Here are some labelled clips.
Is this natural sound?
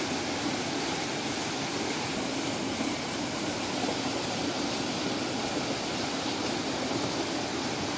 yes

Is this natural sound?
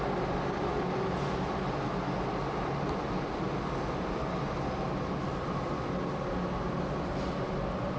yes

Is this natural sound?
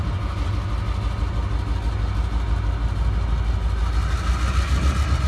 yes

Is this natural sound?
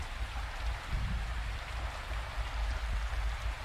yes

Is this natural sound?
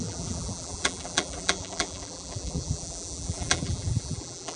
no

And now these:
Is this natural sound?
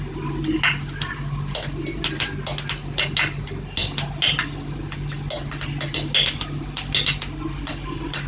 yes